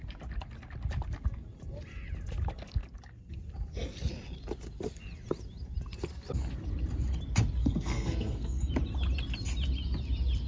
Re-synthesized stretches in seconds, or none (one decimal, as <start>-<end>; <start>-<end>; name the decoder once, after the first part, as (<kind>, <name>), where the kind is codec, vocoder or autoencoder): 7.6-8.7 (codec, SNAC)